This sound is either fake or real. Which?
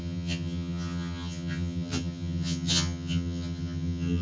fake